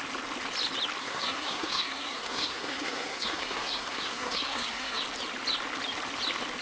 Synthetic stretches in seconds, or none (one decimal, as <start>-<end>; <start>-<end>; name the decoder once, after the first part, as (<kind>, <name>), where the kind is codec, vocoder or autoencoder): 1.0-5.0 (codec, SNAC)